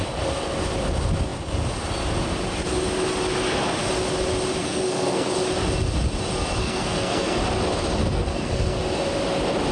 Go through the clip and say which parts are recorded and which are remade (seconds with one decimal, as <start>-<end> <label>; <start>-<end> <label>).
0.0-4.6 recorded; 4.6-5.3 remade; 5.3-6.6 recorded; 6.6-7.4 remade; 7.4-8.0 recorded; 8.0-8.8 remade; 8.8-9.7 recorded